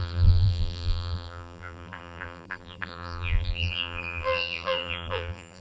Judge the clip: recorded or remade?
remade